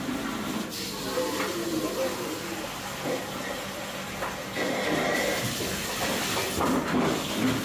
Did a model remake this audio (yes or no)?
no